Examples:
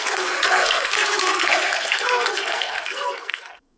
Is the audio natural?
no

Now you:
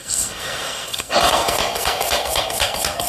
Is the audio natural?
no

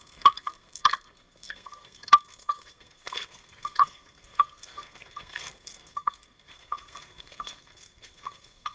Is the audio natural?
no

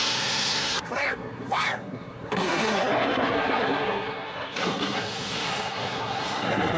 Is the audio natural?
no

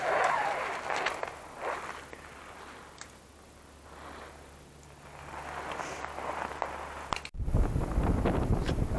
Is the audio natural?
yes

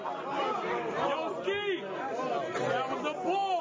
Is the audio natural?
yes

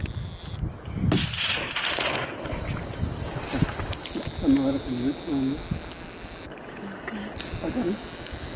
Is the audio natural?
yes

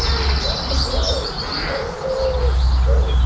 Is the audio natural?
yes